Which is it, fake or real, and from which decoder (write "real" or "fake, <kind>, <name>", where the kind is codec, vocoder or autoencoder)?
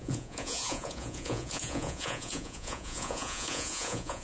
fake, vocoder, Vocos